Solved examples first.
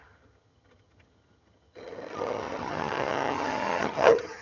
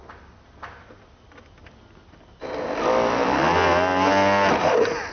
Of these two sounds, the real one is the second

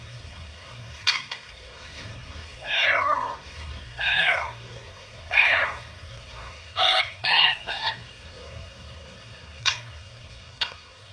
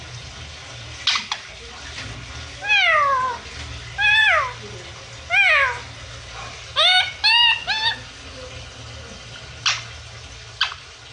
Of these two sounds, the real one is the second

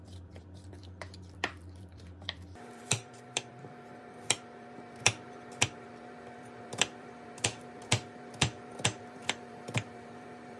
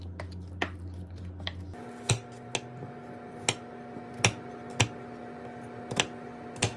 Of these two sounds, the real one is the second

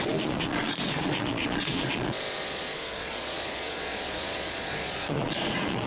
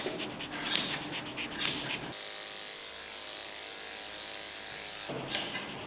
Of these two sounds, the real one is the second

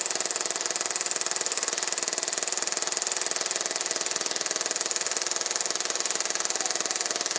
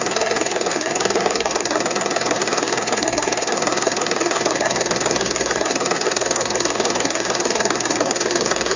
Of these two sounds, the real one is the first